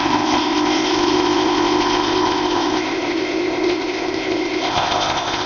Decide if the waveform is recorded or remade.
remade